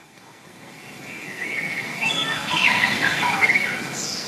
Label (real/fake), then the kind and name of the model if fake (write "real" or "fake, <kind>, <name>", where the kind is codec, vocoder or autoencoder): fake, codec, SNAC